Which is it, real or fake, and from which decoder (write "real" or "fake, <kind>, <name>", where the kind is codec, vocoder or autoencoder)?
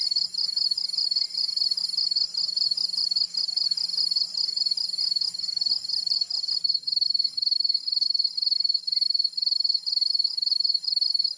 real